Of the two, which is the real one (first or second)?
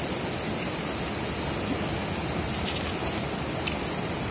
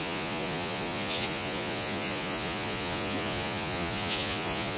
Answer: first